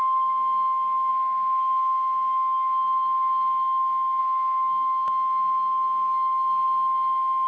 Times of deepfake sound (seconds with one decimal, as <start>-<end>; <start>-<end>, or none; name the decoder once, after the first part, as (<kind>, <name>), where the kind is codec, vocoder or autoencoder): 0.0-7.5 (codec, SNAC)